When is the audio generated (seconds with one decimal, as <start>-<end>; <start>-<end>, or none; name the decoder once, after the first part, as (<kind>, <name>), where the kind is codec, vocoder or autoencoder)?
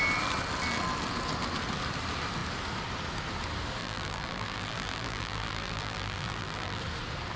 3.8-6.8 (vocoder, BigVGAN v2)